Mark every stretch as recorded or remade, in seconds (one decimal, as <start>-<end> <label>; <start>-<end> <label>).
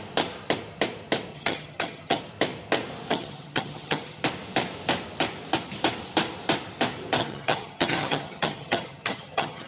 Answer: 0.0-1.3 recorded; 1.3-2.2 remade; 2.2-3.1 recorded; 3.1-4.2 remade; 4.2-7.2 recorded; 7.2-9.7 remade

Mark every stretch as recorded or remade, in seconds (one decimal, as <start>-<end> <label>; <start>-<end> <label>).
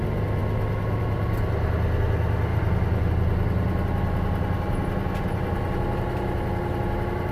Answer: 0.0-7.3 recorded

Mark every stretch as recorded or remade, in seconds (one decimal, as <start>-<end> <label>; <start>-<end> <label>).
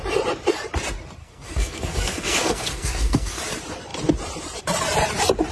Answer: 0.0-1.2 recorded; 1.2-3.4 remade; 3.4-5.5 recorded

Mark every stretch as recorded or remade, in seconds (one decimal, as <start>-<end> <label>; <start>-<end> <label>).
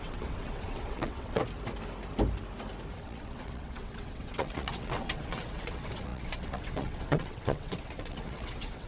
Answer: 0.0-1.4 remade; 1.4-3.0 recorded; 3.0-8.9 remade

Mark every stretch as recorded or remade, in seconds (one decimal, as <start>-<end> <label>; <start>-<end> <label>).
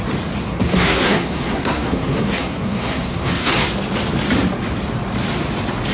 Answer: 0.0-0.4 recorded; 0.4-3.5 remade; 3.5-5.9 recorded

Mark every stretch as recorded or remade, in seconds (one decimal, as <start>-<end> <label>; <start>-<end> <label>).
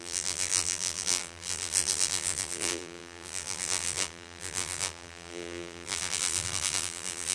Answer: 0.0-7.3 remade